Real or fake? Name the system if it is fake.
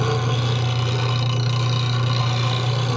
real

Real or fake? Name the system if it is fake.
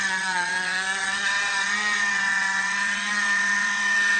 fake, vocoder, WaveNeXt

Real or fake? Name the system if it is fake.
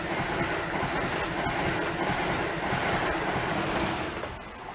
real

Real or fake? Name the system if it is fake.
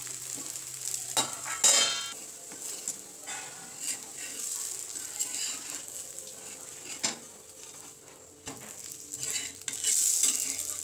real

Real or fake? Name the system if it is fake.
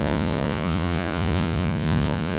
fake, vocoder, Vocos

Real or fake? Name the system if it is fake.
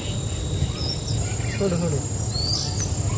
real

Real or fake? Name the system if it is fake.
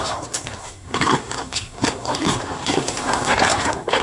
fake, codec, SNAC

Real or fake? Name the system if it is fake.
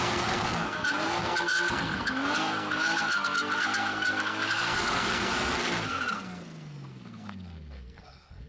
fake, codec, SNAC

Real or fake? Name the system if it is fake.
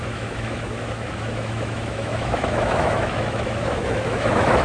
fake, autoencoder, DAC-VAE